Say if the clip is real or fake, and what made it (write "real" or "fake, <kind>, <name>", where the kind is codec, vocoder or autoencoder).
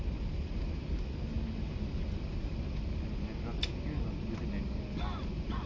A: real